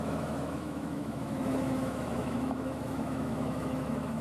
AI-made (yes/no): yes